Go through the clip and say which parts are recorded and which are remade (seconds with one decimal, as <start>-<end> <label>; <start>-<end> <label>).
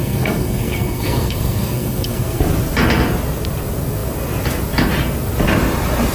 0.0-2.4 remade; 2.4-6.1 recorded